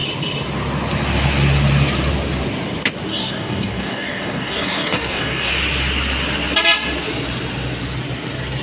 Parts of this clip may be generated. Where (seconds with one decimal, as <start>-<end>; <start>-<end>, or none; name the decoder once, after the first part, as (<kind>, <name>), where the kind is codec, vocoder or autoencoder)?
3.1-5.5 (codec, DAC)